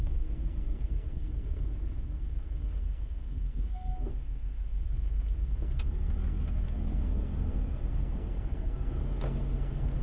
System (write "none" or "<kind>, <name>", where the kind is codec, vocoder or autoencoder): codec, SNAC